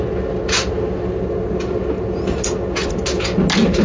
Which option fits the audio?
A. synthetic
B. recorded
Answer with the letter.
B